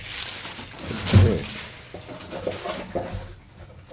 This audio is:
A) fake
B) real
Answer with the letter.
B